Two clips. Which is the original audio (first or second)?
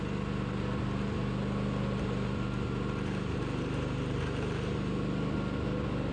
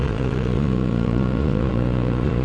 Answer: first